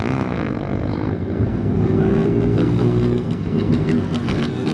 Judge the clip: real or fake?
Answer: fake